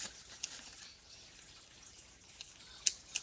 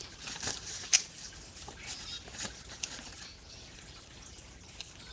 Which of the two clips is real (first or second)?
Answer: first